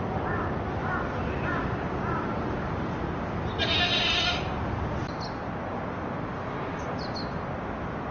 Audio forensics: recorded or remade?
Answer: recorded